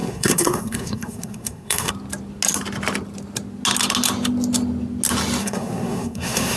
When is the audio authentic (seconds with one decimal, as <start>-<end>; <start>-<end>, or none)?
1.9-5.4